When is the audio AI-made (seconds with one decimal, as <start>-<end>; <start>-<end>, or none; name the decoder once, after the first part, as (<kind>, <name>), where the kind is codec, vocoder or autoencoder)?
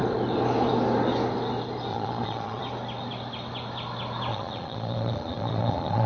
1.9-2.6 (vocoder, Vocos); 4.3-6.1